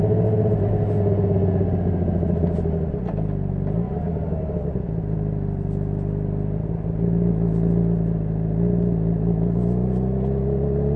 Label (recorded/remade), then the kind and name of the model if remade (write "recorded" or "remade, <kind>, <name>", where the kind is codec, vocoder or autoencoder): recorded